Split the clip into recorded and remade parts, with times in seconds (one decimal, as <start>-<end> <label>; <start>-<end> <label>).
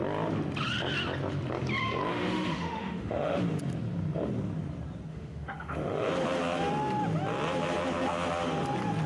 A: 0.0-2.1 recorded; 2.1-3.4 remade; 3.4-5.1 recorded; 5.1-6.1 remade; 6.1-9.1 recorded